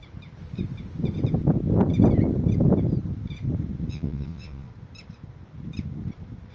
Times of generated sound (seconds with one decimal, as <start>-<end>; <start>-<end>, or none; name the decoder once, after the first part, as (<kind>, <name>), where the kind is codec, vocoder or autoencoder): 3.9-4.7 (vocoder, Vocos)